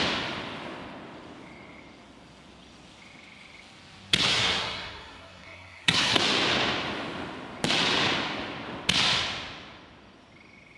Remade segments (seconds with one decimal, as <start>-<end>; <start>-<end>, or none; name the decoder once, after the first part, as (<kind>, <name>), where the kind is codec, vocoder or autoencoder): 4.3-6.2 (codec, SNAC)